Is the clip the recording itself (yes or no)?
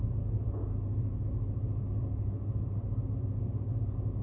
yes